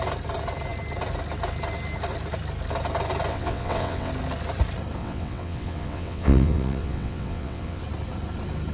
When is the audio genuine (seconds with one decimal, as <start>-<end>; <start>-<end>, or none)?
0.0-3.3; 4.1-5.0; 7.8-8.7